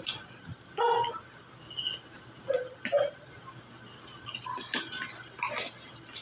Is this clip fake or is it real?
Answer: real